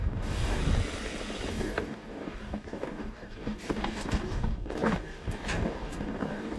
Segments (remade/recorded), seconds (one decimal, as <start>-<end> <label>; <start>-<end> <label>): 0.0-0.6 remade; 0.6-1.5 recorded; 1.5-6.6 remade